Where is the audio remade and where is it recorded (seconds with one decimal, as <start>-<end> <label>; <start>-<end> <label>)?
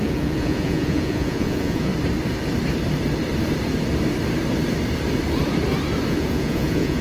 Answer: 0.0-1.9 remade; 1.9-6.1 recorded; 6.1-7.0 remade